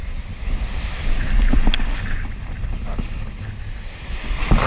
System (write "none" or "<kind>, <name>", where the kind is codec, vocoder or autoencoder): none